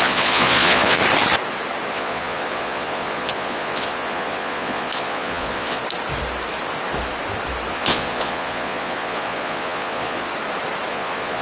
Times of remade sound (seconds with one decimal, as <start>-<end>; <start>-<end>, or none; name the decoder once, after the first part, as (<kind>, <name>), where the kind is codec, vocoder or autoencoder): 0.0-1.0 (vocoder, Vocos); 1.9-5.8; 7.7-10.3; 10.9-11.4